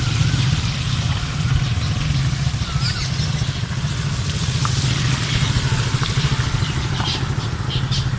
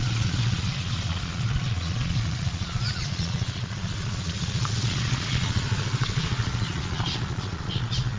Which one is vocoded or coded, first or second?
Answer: second